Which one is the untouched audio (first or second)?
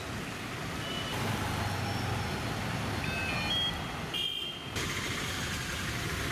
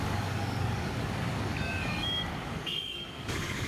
first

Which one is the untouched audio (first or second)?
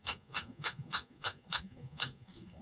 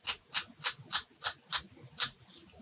second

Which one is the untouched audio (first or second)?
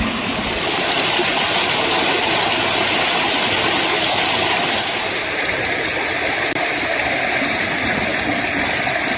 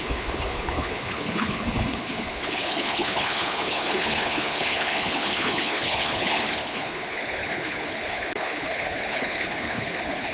first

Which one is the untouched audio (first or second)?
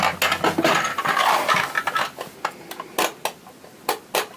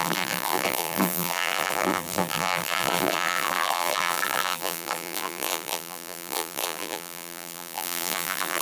first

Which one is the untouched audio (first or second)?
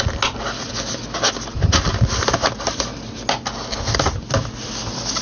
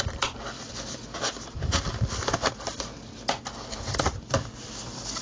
first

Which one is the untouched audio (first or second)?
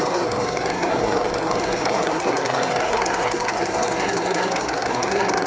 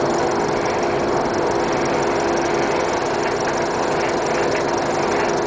second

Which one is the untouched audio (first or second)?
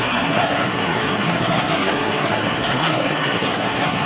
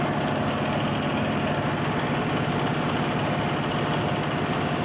second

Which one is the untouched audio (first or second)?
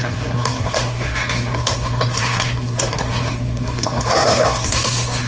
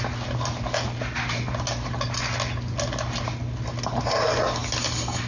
second